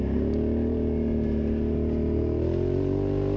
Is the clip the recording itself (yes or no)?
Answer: yes